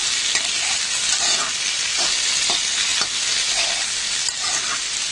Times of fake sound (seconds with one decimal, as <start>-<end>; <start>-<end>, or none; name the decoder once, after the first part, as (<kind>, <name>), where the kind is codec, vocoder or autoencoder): none